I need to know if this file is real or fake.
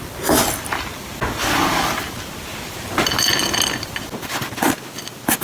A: real